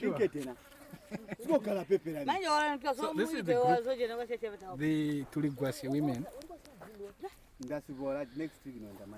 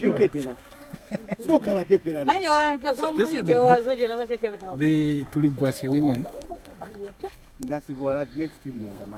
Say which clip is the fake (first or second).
second